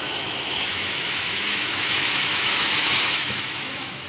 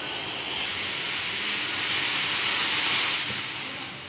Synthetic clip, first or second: first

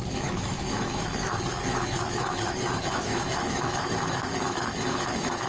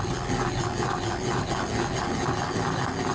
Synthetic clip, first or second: first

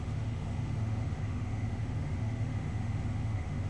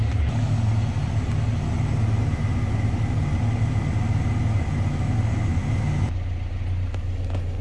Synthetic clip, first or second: first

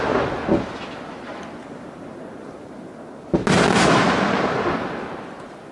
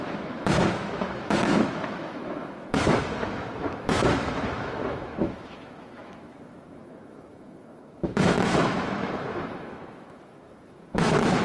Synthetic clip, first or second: second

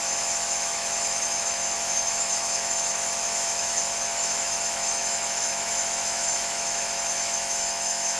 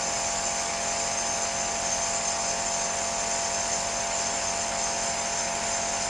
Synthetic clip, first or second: first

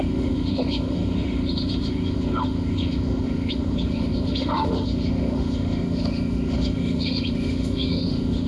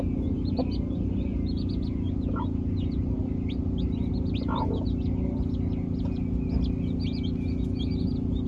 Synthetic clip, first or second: first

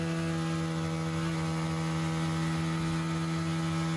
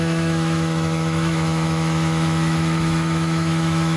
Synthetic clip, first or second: second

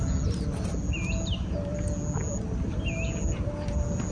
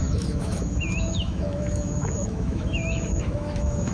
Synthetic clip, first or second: second